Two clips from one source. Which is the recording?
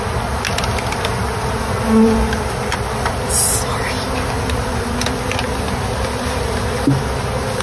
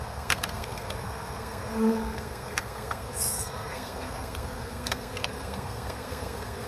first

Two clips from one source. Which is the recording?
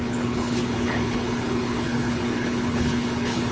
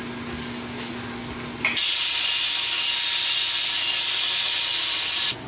second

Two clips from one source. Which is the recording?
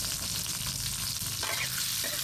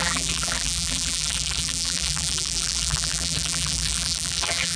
first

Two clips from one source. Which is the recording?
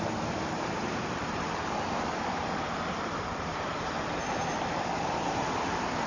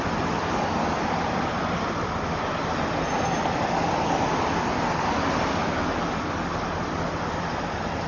second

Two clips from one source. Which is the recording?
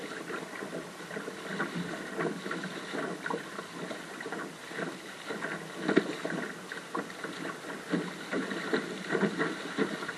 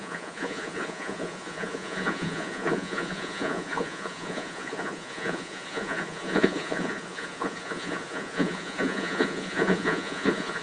first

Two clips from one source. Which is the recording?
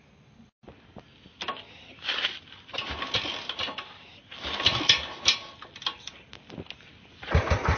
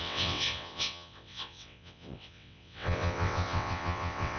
first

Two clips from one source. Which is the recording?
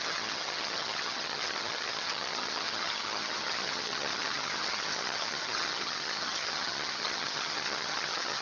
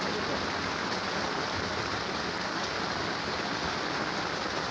second